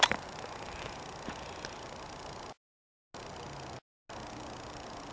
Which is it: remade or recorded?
recorded